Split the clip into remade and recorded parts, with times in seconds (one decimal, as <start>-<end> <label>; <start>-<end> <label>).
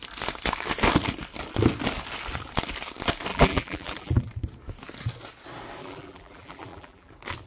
0.0-3.3 recorded; 3.3-4.3 remade; 4.3-5.8 recorded; 5.8-7.1 remade; 7.1-7.5 recorded